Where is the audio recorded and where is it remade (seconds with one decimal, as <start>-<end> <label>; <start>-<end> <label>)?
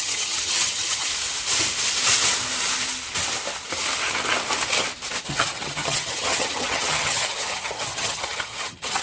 0.0-1.1 remade; 1.1-5.2 recorded; 5.2-9.0 remade